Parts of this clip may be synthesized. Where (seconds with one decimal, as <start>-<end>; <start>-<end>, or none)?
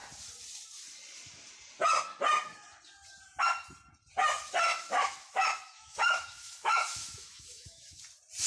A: 4.7-8.0